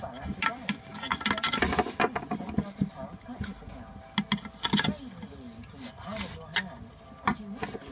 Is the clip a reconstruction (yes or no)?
no